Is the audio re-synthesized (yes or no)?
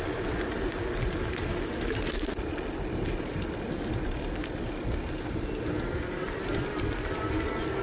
no